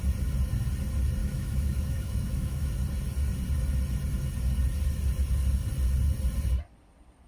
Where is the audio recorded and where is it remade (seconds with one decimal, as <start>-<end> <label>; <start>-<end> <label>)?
0.0-1.2 recorded; 1.2-2.7 remade; 2.7-7.3 recorded